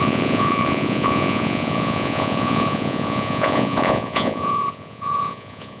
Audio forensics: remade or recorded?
remade